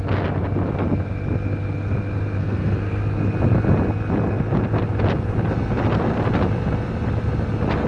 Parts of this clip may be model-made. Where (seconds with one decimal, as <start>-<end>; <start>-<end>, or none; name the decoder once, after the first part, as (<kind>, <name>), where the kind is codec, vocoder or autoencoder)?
2.4-3.0 (codec, SNAC)